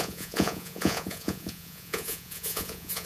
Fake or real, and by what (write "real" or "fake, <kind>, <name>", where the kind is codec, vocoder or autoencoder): fake, vocoder, Vocos